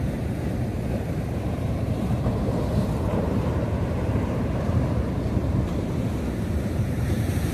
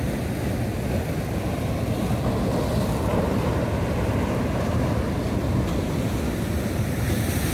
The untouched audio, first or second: second